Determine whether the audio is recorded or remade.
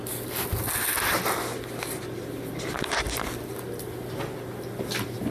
recorded